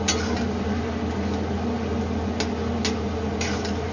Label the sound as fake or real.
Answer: real